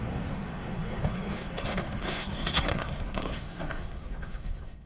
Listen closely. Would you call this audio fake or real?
fake